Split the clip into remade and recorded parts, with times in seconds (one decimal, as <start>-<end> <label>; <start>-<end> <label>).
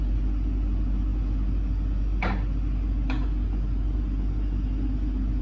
0.0-5.4 recorded